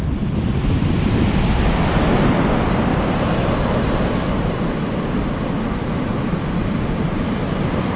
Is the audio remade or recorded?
recorded